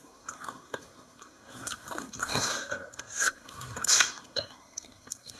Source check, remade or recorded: remade